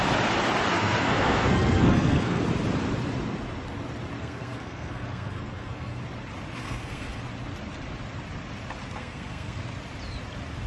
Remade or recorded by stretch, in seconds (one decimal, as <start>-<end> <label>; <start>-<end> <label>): 0.0-0.7 recorded; 0.7-2.4 remade; 2.4-4.2 recorded; 4.2-6.0 remade; 6.0-6.6 recorded; 6.6-7.2 remade; 7.2-9.0 recorded; 9.0-9.6 remade; 9.6-10.7 recorded